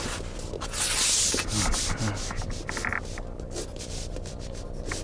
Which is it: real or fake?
real